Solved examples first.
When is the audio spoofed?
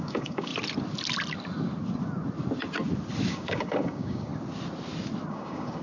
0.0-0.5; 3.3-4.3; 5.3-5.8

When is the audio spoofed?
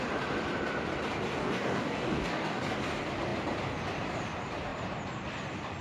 1.4-2.8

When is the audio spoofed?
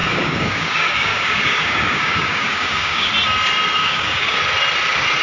0.0-3.1; 3.8-4.4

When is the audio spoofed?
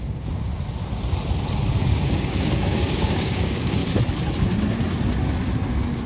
0.0-0.5; 1.7-3.8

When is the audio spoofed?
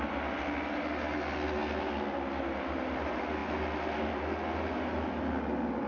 none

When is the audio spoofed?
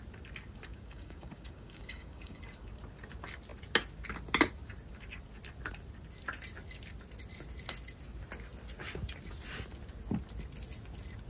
0.7-2.4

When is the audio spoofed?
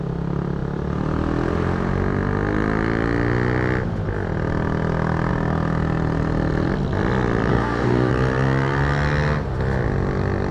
7.5-8.1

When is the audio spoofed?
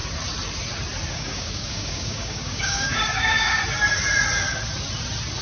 1.1-3.6